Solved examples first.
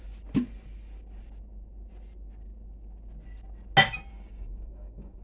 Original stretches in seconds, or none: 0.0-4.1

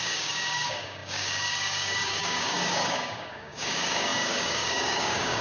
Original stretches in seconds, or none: none

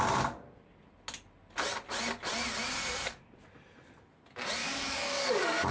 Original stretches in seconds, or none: 0.0-4.6

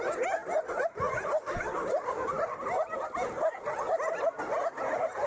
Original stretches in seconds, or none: 0.0-5.3

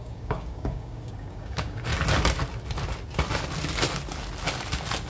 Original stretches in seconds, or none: 1.9-5.1

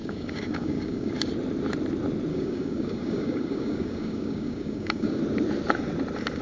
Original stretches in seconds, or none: 1.1-2.3; 5.2-6.4

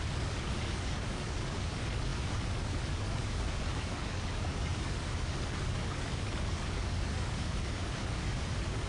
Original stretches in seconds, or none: none